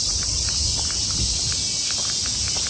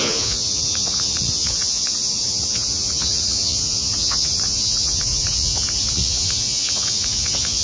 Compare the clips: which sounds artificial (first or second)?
second